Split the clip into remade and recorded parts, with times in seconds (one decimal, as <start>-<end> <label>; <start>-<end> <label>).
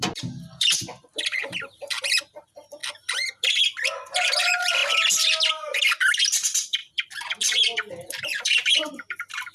0.0-1.4 remade; 1.4-2.2 recorded; 2.2-2.8 remade; 2.8-3.8 recorded; 3.8-4.8 remade; 4.8-5.5 recorded; 5.5-6.8 remade; 6.8-7.9 recorded; 7.9-9.5 remade